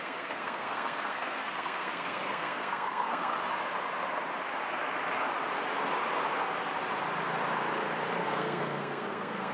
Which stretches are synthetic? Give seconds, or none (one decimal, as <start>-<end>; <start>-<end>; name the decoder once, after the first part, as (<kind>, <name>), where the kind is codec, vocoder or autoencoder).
0.0-3.3 (codec, SNAC); 8.2-9.5